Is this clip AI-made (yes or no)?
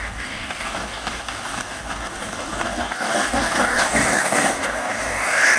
yes